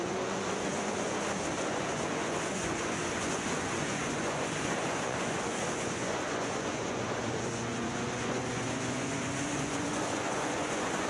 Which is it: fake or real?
fake